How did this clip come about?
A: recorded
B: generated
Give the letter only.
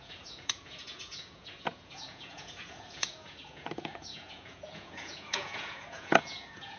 B